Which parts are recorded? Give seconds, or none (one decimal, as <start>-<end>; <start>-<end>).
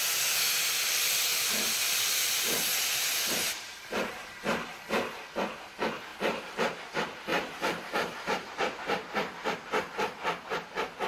0.0-1.3; 4.7-6.1; 6.7-7.3; 9.1-11.1